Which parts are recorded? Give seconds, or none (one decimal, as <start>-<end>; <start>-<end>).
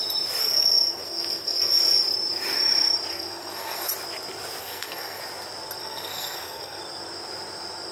0.0-0.4; 1.8-3.1; 3.9-4.6; 5.2-5.8; 6.8-7.9